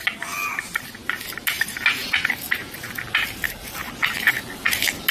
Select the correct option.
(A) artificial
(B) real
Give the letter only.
B